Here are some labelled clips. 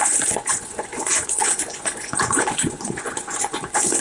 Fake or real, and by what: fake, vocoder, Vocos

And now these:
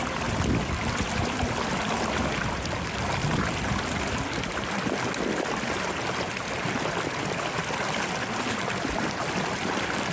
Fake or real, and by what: real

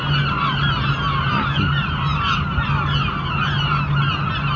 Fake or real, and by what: real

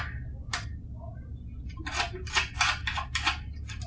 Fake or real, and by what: real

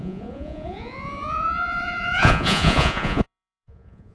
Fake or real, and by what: fake, vocoder, Vocos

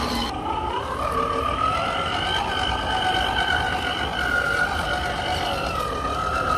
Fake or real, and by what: real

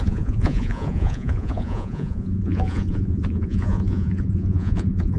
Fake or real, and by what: fake, vocoder, Vocos